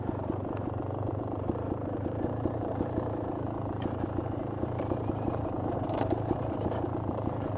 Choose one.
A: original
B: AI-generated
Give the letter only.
B